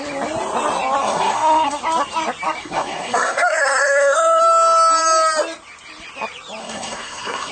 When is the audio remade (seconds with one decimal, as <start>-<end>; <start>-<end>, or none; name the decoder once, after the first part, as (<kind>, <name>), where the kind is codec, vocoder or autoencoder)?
1.0-1.8 (codec, SNAC); 2.6-4.4; 6.6-7.5

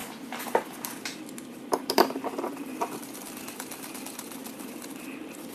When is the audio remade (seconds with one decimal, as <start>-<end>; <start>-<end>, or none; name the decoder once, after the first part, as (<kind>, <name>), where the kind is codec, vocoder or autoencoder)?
0.0-2.8 (vocoder, BigVGAN v2); 4.4-5.5

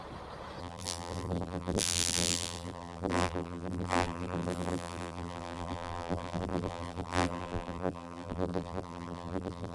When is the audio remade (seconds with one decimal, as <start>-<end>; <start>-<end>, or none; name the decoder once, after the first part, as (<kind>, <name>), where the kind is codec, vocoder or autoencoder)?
0.6-9.7 (vocoder, BigVGAN v2)

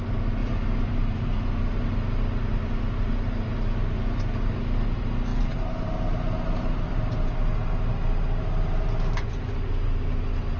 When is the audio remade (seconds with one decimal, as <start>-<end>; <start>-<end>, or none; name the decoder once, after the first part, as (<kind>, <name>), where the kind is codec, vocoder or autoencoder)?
none

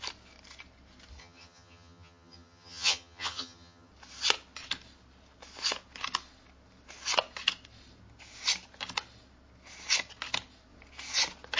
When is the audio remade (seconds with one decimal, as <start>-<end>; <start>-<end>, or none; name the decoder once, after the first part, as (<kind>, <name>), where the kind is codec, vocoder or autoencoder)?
1.2-3.9 (vocoder, HiFi-GAN)

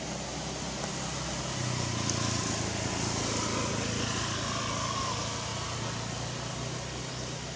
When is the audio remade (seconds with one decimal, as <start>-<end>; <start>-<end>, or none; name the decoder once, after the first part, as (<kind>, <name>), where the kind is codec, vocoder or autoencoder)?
none